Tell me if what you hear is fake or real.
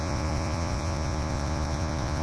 fake